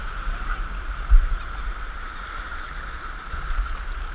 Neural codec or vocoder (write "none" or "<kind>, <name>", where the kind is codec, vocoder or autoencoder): none